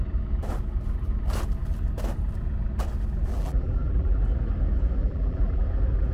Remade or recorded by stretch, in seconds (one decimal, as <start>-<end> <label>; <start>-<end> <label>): 0.0-3.3 recorded; 3.3-4.2 remade; 4.2-5.0 recorded; 5.0-5.6 remade; 5.6-6.1 recorded